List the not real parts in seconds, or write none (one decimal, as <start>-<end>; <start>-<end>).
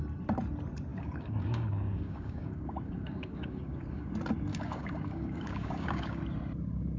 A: 0.9-4.1; 4.5-6.2